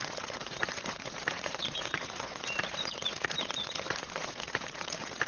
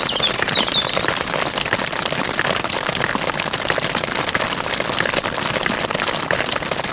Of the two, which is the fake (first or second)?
first